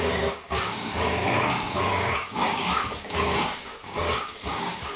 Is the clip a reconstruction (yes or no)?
yes